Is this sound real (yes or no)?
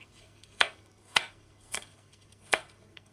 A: no